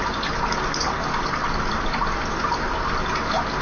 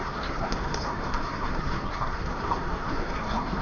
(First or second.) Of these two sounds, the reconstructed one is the second